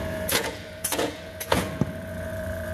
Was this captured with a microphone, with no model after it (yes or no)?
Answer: no